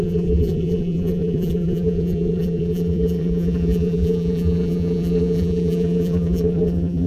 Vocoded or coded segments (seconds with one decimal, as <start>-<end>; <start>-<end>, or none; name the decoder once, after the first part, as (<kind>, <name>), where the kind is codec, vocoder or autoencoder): 0.0-7.1 (vocoder, BigVGAN v2)